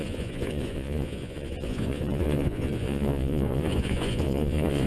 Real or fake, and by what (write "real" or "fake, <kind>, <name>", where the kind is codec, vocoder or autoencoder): fake, vocoder, Vocos